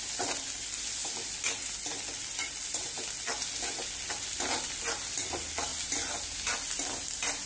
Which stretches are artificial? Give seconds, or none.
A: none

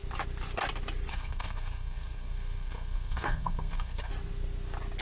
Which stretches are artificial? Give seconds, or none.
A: 1.1-4.1 (codec, SNAC)

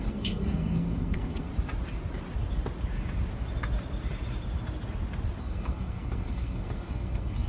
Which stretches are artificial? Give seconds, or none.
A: 0.0-1.5 (codec, SNAC); 5.4-7.5